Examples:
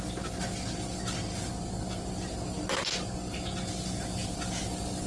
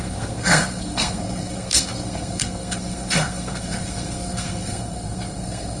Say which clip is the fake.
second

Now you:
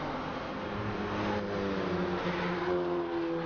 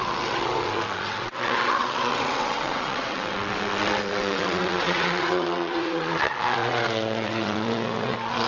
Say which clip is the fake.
second